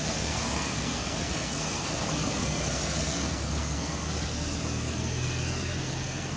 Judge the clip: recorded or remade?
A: remade